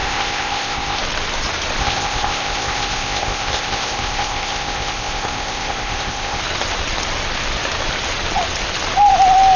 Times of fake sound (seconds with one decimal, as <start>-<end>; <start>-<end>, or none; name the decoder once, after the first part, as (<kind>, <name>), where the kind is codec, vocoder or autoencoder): 0.0-1.0 (codec, ZipCodec); 1.8-6.4